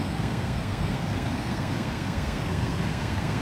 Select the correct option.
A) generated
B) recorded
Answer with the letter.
A